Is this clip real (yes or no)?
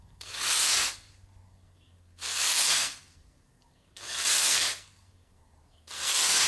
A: no